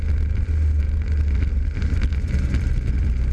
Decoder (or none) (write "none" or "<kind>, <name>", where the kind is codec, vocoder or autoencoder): none